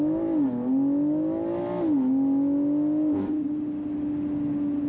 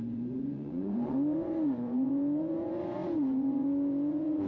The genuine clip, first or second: first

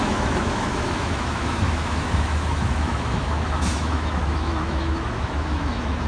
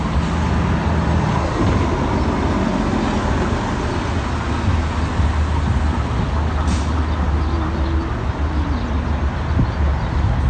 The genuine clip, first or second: second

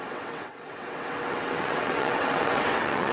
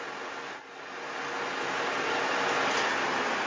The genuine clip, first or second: second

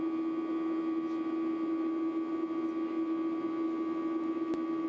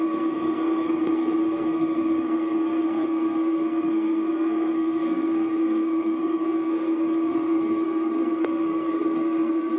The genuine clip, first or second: first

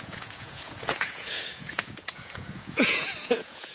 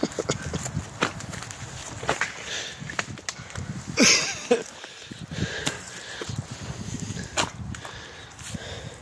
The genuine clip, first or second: second